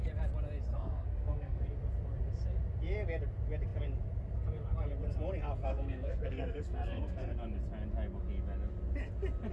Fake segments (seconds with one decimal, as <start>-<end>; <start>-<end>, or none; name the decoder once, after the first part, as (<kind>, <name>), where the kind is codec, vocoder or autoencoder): 0.7-1.6 (codec, SNAC); 5.6-7.3